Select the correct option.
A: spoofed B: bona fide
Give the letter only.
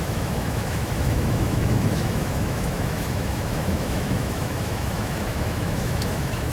A